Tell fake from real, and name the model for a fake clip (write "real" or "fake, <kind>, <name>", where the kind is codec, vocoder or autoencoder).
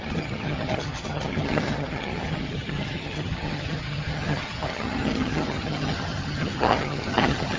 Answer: fake, vocoder, HiFi-GAN